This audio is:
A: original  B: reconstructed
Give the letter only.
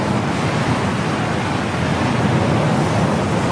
A